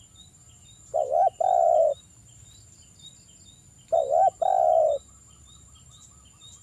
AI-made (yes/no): no